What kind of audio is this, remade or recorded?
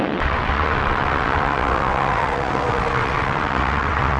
remade